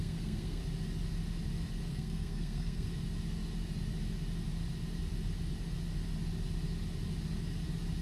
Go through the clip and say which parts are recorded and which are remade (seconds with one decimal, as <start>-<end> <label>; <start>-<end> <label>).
0.0-0.6 remade; 0.6-1.9 recorded; 1.9-2.9 remade; 2.9-8.0 recorded